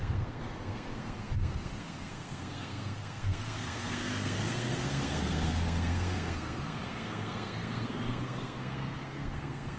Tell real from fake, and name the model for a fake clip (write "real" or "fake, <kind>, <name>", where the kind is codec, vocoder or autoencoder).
fake, codec, SNAC